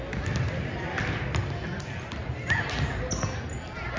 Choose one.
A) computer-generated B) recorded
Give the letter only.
B